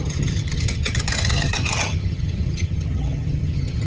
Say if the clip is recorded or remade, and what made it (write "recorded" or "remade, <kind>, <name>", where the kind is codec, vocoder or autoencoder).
remade, vocoder, HiFi-GAN